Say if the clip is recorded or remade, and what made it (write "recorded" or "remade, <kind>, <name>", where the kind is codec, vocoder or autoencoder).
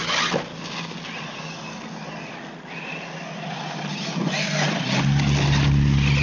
recorded